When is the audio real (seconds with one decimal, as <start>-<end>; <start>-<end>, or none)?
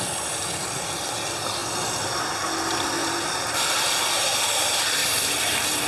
0.0-3.0; 4.1-5.0